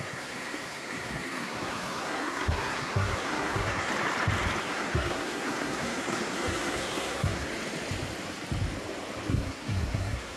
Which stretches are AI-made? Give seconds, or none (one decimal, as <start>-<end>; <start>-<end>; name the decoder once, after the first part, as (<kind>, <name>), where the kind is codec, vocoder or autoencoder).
0.0-3.9 (codec, SNAC); 4.6-7.5; 9.3-10.4

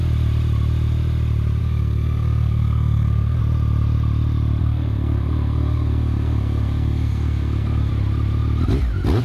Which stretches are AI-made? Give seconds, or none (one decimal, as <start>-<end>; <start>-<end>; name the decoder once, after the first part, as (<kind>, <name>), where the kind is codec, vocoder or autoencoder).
1.6-3.4 (codec, SNAC); 4.6-7.9

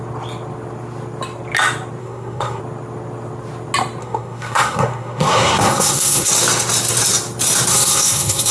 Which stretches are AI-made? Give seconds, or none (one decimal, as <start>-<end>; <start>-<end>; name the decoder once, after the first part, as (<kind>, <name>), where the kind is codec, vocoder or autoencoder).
2.0-2.6 (codec, SNAC); 4.0-6.3; 7.7-8.5